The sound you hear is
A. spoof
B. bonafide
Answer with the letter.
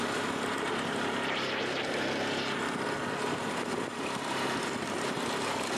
B